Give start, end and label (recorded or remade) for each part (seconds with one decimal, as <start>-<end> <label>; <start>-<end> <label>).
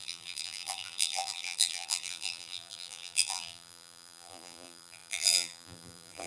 0.0-6.3 remade